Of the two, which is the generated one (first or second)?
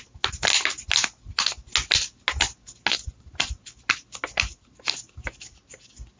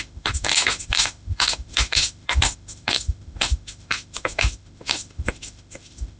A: second